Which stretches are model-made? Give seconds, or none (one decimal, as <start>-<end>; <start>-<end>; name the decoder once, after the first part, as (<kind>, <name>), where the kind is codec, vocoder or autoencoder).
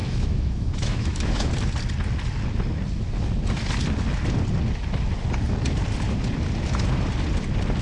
0.0-1.5 (autoencoder, DAC-VAE)